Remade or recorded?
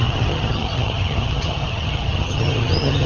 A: remade